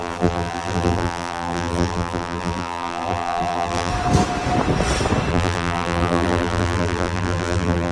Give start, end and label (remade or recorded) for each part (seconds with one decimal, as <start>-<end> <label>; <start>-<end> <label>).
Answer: 0.0-3.9 remade; 3.9-5.3 recorded; 5.3-7.9 remade